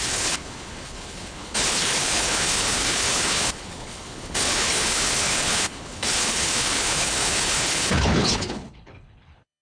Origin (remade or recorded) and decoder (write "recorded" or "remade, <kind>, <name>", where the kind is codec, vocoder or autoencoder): remade, codec, HILCodec